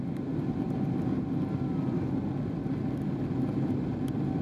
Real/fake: real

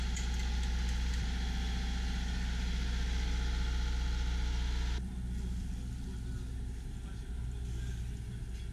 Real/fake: real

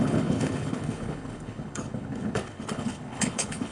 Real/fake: fake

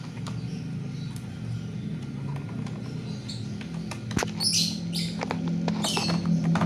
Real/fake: real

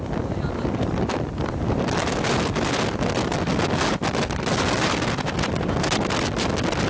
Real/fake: real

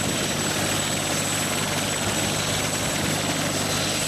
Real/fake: real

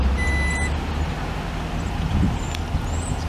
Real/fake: real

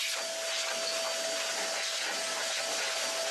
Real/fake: real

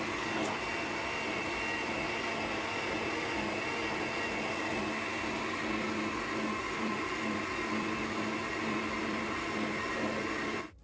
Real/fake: real